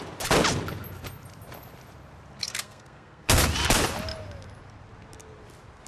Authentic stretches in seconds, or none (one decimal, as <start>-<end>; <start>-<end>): 0.0-2.4; 3.4-5.9